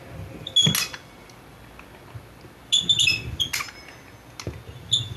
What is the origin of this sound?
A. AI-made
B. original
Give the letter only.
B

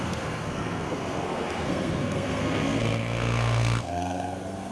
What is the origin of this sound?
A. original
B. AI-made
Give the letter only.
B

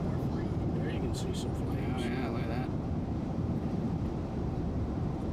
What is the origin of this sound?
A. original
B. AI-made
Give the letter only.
B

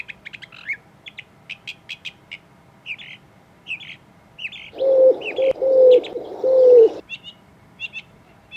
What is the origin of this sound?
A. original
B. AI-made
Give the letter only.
A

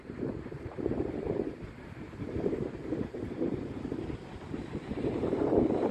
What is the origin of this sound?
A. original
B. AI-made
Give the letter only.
B